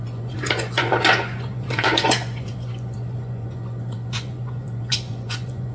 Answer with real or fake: fake